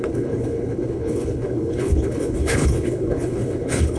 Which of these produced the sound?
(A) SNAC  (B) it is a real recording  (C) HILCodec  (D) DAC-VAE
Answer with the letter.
C